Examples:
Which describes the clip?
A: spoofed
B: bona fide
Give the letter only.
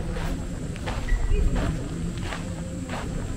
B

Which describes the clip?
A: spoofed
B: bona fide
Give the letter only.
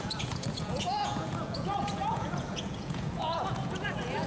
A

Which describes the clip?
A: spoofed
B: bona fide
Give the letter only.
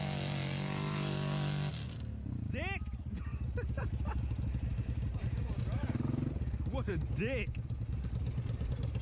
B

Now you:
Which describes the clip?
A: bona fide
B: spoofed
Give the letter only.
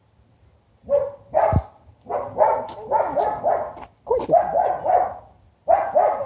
A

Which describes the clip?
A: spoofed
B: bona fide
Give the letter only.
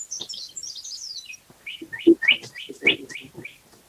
B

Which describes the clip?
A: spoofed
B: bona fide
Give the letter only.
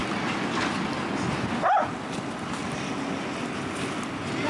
B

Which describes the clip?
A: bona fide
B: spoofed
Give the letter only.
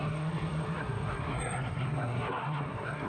B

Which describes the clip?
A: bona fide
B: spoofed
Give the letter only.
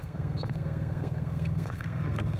B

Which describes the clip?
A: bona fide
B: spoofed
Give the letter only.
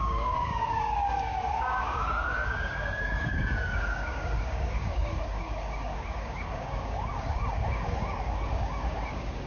B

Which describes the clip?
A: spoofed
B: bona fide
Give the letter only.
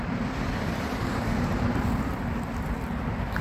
B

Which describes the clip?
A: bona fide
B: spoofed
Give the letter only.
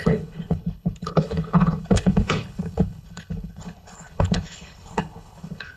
B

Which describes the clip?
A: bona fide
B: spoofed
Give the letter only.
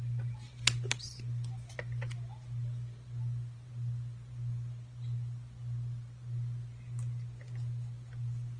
A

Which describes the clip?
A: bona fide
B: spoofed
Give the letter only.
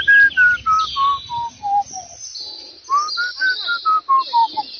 A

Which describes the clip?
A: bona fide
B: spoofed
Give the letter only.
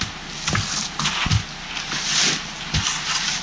A